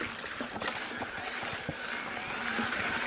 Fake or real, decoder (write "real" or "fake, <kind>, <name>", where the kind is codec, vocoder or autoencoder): real